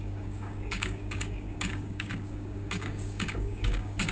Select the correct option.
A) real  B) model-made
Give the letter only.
B